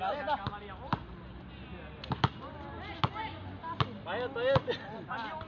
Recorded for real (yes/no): yes